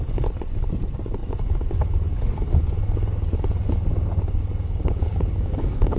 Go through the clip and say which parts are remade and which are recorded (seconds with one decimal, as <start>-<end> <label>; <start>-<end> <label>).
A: 0.0-5.0 recorded; 5.0-6.0 remade